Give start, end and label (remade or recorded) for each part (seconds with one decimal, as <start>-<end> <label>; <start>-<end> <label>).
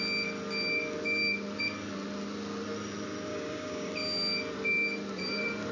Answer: 0.0-3.3 recorded; 3.3-3.9 remade; 3.9-5.7 recorded